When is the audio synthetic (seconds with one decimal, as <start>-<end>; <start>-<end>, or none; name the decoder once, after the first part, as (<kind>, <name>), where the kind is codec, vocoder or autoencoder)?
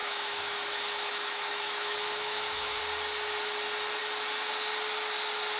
0.0-2.8 (autoencoder, DAC-VAE)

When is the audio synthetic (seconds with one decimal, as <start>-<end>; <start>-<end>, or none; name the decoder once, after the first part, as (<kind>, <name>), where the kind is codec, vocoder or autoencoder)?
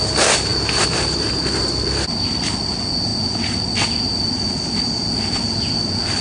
none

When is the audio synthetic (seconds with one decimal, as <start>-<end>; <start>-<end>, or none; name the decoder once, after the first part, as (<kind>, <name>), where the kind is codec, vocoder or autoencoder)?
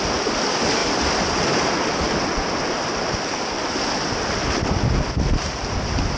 none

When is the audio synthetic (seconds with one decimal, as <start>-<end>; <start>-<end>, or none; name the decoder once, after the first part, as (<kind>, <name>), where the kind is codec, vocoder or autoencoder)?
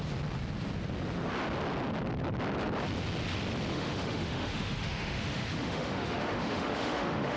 3.7-7.4 (autoencoder, DAC-VAE)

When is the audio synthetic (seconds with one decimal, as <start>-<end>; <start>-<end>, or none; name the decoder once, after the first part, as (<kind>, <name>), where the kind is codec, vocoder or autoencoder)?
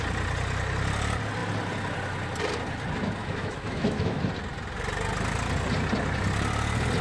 3.2-4.2 (autoencoder, DAC-VAE)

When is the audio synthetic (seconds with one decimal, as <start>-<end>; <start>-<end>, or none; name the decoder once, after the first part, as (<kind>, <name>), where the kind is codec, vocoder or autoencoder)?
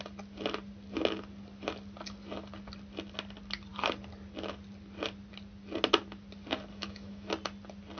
6.7-7.3 (autoencoder, DAC-VAE)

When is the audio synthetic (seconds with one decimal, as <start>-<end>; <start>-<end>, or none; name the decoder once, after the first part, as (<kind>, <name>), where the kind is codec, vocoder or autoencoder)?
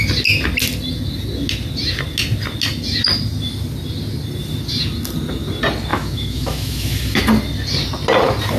5.9-7.2 (autoencoder, DAC-VAE)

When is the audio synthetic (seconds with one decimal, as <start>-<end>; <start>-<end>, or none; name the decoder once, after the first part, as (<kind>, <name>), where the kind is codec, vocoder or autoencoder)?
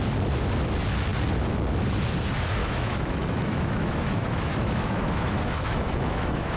2.6-6.6 (autoencoder, DAC-VAE)